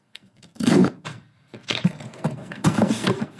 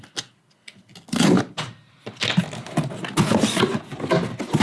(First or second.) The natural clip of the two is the second